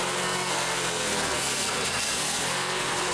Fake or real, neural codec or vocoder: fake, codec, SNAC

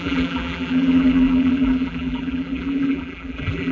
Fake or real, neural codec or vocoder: fake, vocoder, BigVGAN v2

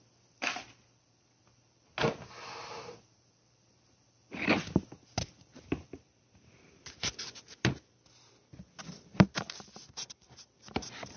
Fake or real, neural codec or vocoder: fake, vocoder, BigVGAN v2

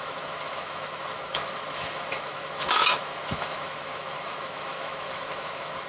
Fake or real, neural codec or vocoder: fake, autoencoder, DAC-VAE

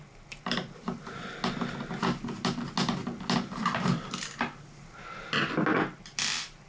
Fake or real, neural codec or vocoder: real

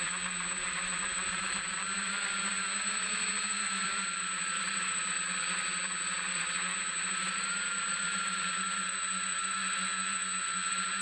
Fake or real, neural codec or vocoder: fake, vocoder, BigVGAN v2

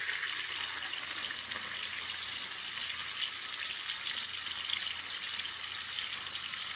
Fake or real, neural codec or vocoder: real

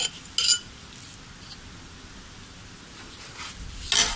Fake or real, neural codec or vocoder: real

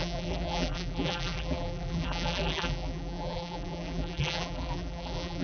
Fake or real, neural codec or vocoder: fake, vocoder, BigVGAN v2